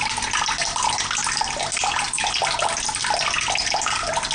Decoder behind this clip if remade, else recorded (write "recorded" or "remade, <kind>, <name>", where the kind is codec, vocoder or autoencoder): recorded